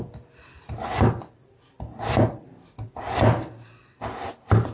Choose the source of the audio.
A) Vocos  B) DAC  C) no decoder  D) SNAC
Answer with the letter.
C